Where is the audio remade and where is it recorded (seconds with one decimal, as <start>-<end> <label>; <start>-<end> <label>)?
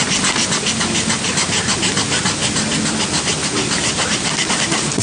0.0-2.4 recorded; 2.4-3.9 remade; 3.9-5.0 recorded